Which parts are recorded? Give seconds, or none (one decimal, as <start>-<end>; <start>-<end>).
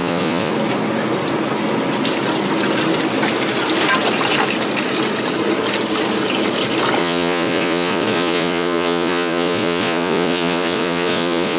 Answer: 0.5-7.0